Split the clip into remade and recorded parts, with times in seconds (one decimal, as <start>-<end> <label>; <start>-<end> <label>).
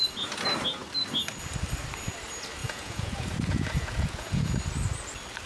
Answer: 0.0-2.6 recorded; 2.6-4.4 remade; 4.4-5.5 recorded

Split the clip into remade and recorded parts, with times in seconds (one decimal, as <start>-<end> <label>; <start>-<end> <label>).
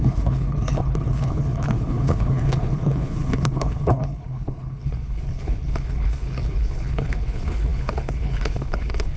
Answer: 0.0-9.2 remade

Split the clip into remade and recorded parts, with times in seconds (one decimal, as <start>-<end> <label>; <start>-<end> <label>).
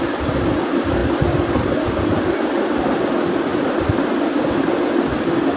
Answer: 0.0-5.6 recorded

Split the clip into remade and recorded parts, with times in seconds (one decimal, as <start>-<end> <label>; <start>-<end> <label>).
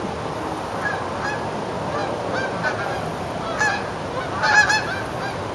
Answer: 0.0-5.5 recorded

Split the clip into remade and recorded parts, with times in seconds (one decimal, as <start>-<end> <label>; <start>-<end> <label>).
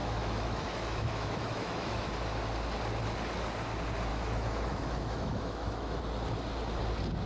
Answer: 0.0-2.1 remade; 2.1-4.1 recorded; 4.1-6.0 remade; 6.0-7.3 recorded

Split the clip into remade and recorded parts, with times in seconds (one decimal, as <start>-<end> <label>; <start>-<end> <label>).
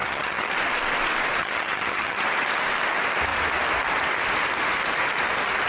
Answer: 0.0-0.5 remade; 0.5-1.4 recorded; 1.4-2.2 remade; 2.2-5.7 recorded